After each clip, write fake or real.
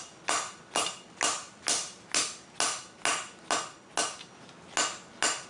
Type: real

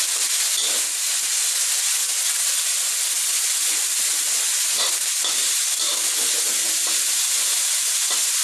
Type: real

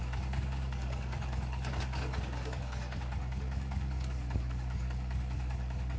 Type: fake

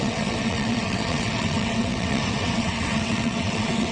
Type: fake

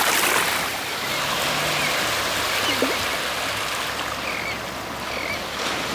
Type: real